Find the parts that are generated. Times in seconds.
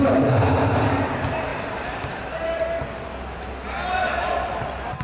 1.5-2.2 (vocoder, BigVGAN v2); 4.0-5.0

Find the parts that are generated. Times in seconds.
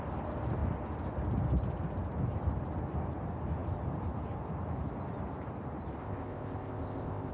6.0-7.3 (codec, ZipCodec)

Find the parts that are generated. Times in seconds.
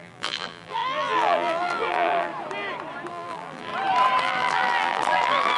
0.0-2.3 (vocoder, BigVGAN v2); 3.1-3.7; 4.2-5.6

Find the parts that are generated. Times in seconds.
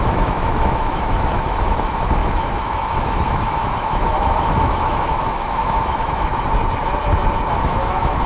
0.0-6.3 (autoencoder, DAC-VAE); 7.5-8.3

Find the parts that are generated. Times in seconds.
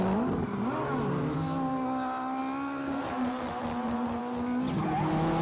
none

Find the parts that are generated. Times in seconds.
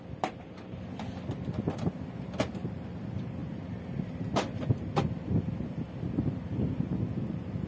none